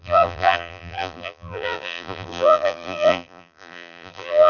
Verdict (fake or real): fake